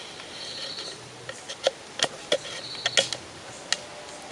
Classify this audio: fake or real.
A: real